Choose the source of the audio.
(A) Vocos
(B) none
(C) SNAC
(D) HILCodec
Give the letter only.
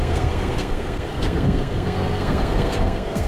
C